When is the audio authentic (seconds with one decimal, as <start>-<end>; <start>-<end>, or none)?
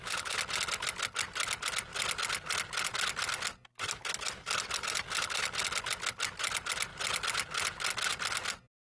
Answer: 0.0-6.9; 7.9-9.0